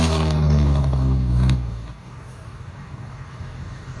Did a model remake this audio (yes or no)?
yes